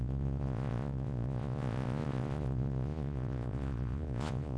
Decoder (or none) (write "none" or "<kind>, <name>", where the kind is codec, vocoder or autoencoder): vocoder, Vocos